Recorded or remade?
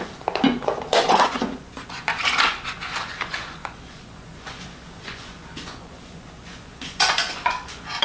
remade